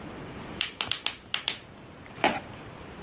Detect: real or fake fake